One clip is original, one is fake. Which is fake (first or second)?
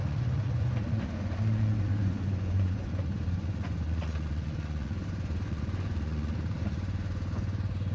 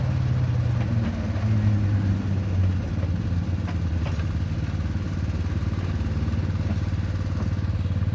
first